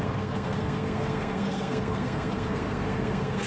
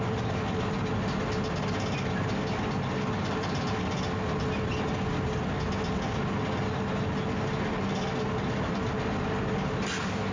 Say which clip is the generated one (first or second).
first